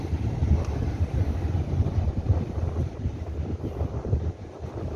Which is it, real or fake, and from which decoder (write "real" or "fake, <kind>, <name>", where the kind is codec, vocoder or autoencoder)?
real